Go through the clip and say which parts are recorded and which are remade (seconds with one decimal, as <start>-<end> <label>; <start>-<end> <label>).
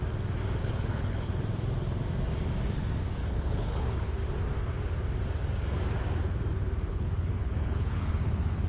0.0-0.6 recorded; 0.6-1.3 remade; 1.3-3.2 recorded; 3.2-4.1 remade; 4.1-6.9 recorded; 6.9-8.7 remade